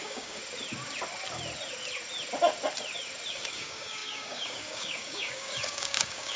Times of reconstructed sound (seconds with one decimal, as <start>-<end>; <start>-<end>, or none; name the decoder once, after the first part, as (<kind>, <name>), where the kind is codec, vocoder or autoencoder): 0.0-0.4 (codec, DAC); 3.3-6.4

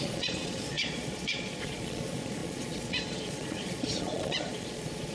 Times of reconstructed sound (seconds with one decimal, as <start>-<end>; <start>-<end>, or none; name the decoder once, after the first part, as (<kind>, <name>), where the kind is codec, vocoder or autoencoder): 0.0-5.1 (vocoder, Vocos)

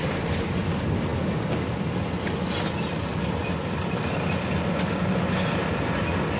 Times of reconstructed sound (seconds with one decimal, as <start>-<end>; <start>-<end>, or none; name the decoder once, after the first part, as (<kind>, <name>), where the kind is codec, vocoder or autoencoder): none

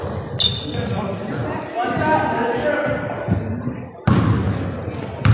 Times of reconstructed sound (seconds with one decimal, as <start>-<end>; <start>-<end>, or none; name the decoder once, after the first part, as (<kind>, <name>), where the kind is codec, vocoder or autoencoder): none